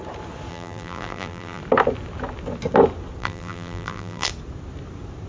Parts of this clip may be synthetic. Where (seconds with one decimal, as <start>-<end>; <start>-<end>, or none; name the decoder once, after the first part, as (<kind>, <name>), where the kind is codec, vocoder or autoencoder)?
0.5-1.6 (vocoder, BigVGAN v2); 3.2-4.3